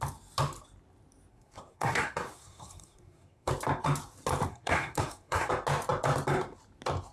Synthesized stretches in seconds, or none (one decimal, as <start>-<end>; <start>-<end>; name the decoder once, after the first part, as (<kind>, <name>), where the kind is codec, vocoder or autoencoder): 1.3-3.5 (codec, SNAC); 4.5-5.5